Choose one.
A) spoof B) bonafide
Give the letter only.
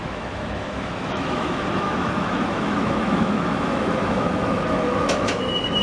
A